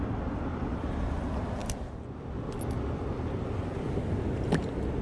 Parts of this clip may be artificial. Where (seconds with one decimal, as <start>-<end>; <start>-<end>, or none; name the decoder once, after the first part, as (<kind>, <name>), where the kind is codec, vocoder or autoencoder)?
0.5-1.1 (vocoder, BigVGAN v2)